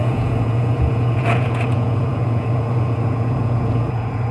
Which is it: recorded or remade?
remade